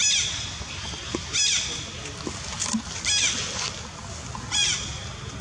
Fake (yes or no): no